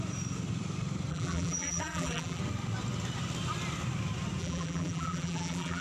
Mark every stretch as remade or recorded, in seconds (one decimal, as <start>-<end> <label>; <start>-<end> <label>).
0.0-1.1 recorded; 1.1-2.4 remade; 2.4-4.4 recorded; 4.4-5.8 remade